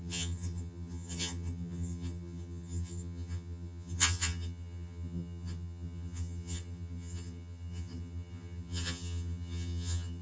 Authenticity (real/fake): fake